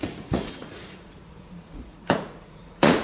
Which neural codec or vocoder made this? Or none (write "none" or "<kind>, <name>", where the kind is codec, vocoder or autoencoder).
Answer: vocoder, Vocos